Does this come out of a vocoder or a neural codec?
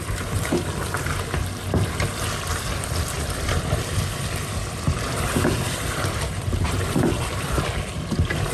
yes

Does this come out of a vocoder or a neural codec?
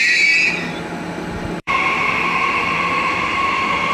yes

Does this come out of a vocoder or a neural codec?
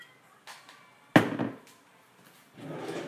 no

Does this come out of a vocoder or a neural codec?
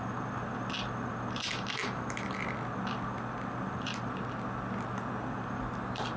no